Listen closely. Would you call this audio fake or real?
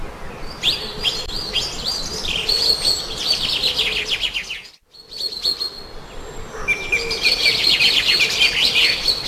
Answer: real